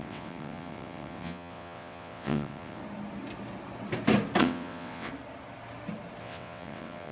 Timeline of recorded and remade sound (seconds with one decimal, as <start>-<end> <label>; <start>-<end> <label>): 0.0-2.8 remade; 2.8-4.4 recorded; 4.4-5.1 remade; 5.1-6.2 recorded; 6.2-7.1 remade